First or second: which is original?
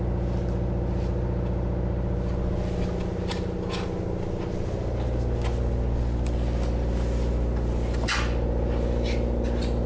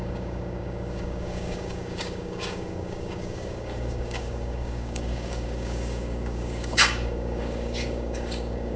first